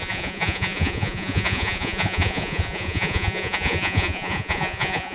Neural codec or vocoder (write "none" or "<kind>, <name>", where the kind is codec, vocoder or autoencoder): vocoder, Vocos